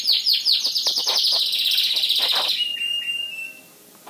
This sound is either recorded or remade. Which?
recorded